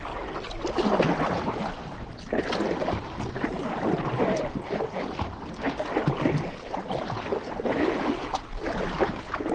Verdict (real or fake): real